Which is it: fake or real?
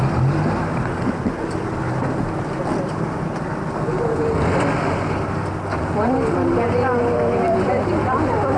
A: real